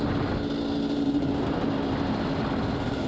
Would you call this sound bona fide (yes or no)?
yes